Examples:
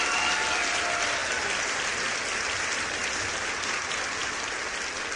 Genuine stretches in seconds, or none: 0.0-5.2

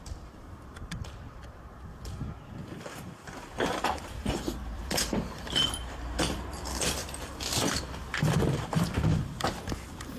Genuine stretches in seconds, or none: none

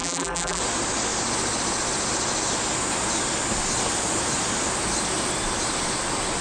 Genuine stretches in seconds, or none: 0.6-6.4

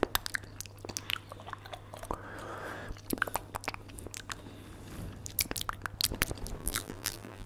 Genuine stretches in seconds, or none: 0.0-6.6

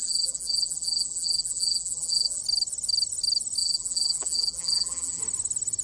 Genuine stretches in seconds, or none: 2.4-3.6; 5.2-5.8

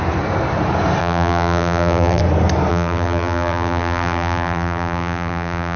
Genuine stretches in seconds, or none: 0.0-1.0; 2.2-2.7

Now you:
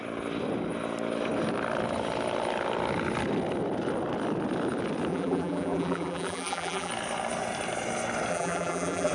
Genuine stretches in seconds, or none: 0.0-5.1; 6.9-8.3